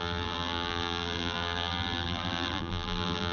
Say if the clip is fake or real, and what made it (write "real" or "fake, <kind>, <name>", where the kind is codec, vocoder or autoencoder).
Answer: fake, vocoder, BigVGAN v2